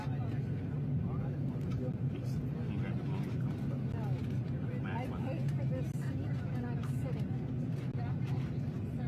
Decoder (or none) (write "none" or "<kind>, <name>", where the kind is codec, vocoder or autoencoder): none